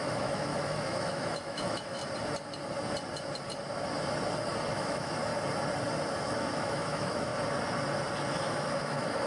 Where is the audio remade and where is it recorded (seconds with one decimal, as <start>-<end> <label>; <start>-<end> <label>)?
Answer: 0.0-2.0 remade; 2.0-4.7 recorded; 4.7-5.3 remade; 5.3-6.2 recorded; 6.2-7.3 remade; 7.3-8.4 recorded; 8.4-9.3 remade